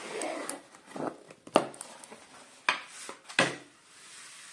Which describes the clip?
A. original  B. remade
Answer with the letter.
A